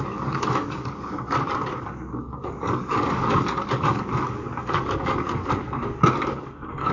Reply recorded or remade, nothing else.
remade